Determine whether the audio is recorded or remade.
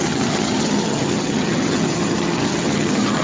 remade